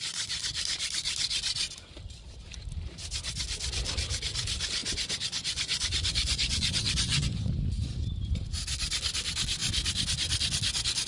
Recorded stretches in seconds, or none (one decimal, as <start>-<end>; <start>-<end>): 0.0-4.8; 7.5-11.1